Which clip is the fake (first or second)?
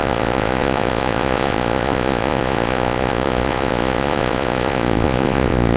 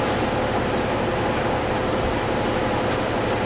first